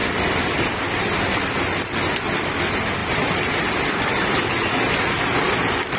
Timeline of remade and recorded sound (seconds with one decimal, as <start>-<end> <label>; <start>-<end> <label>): 0.0-1.6 remade; 1.6-3.0 recorded; 3.0-4.5 remade; 4.5-6.0 recorded